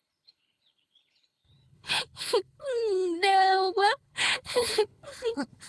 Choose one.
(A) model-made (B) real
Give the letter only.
A